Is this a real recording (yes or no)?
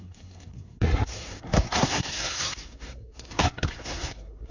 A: no